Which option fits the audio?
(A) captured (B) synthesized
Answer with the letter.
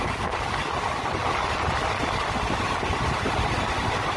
A